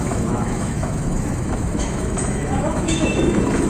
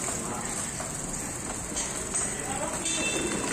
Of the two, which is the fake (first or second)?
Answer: first